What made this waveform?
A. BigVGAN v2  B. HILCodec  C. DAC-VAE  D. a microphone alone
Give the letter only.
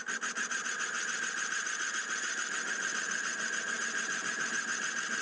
D